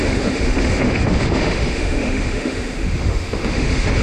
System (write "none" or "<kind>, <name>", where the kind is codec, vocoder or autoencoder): autoencoder, DAC-VAE